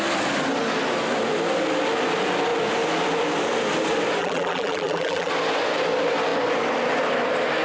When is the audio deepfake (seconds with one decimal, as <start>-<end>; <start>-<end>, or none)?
4.2-5.3